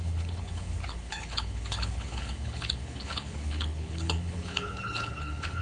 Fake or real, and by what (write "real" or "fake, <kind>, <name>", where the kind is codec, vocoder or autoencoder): fake, codec, HILCodec